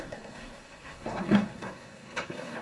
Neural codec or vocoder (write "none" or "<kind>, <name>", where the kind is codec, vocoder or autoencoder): codec, SNAC